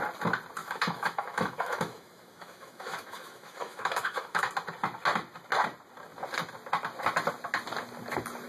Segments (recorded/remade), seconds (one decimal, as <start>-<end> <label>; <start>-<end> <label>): 0.0-0.6 recorded; 0.6-4.5 remade; 4.5-8.5 recorded